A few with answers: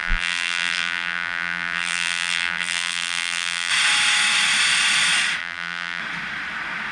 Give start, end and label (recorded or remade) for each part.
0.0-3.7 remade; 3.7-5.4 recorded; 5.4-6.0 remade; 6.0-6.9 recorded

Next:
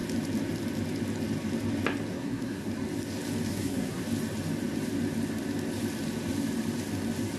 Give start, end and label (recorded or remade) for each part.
0.0-2.1 recorded; 2.1-2.7 remade; 2.7-3.5 recorded; 3.5-4.0 remade; 4.0-7.4 recorded

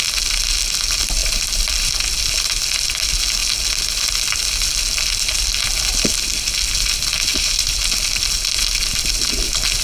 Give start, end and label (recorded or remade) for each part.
0.0-7.3 recorded; 7.3-7.8 remade; 7.8-9.8 recorded

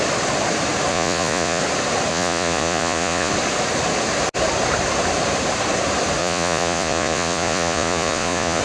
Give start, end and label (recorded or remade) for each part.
0.0-0.9 recorded; 0.9-1.6 remade; 1.6-2.1 recorded; 2.1-3.3 remade; 3.3-6.2 recorded; 6.2-8.6 remade